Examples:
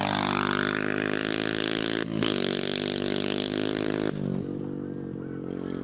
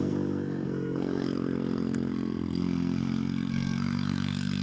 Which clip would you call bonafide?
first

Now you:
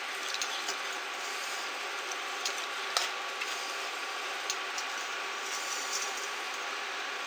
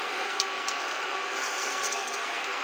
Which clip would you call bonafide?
first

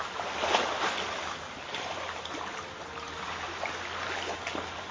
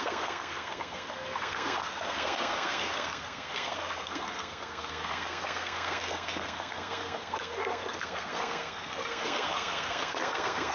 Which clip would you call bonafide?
first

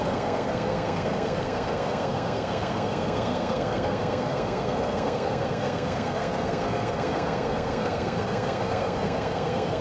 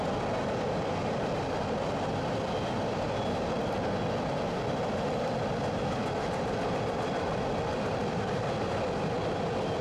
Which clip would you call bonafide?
second